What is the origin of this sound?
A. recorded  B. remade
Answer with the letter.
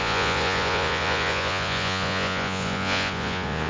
B